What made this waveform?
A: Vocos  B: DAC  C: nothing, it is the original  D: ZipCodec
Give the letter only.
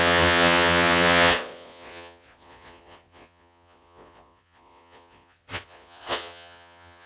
A